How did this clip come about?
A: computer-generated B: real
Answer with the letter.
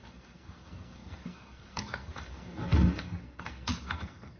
A